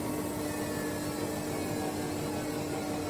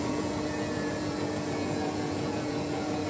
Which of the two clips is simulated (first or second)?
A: second